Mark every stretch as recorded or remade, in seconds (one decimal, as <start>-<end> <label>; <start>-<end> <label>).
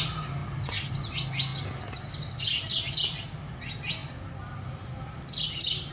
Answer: 0.0-5.9 recorded